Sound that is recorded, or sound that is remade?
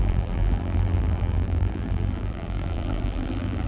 remade